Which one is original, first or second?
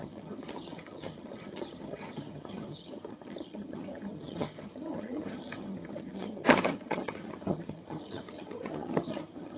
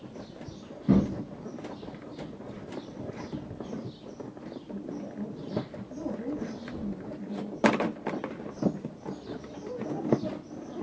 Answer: second